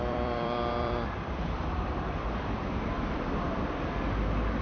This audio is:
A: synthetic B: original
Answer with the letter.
A